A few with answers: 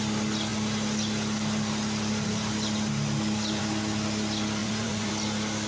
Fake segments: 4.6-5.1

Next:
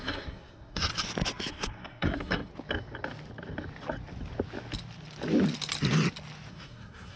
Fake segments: 0.0-0.9; 1.5-2.5; 6.5-7.2

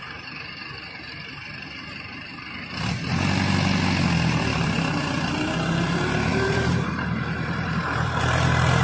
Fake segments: 6.3-8.2

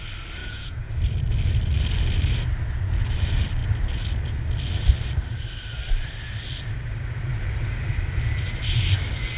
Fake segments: 0.4-0.9